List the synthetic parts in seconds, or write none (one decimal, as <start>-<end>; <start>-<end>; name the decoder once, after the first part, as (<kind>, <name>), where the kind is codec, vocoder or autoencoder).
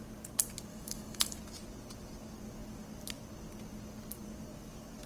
0.7-1.4 (autoencoder, DAC-VAE)